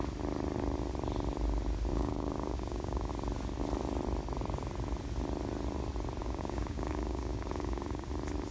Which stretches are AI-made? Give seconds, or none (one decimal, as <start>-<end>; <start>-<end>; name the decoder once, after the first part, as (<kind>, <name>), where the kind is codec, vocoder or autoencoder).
1.9-3.1 (codec, DAC); 6.2-8.1